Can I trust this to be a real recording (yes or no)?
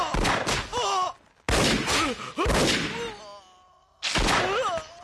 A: yes